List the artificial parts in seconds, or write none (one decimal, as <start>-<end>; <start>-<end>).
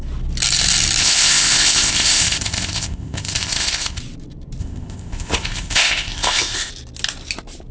1.0-4.0; 4.6-6.7